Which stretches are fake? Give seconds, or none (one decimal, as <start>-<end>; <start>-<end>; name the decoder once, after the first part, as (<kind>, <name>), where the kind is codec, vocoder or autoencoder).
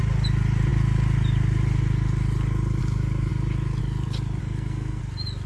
4.4-5.0 (codec, SNAC)